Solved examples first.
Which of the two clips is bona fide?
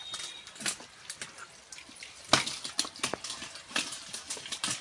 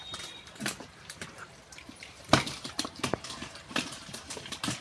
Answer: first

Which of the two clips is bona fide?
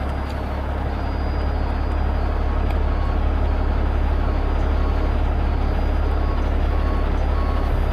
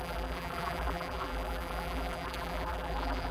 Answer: first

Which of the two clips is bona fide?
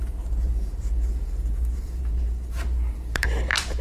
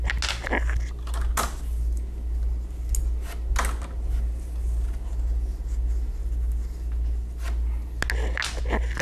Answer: second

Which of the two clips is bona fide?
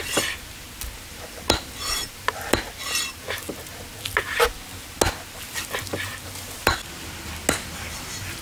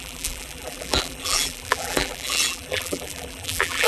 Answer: first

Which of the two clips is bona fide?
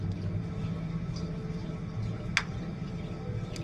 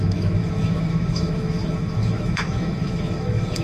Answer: first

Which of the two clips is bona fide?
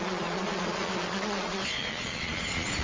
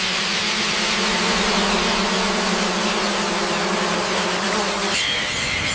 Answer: second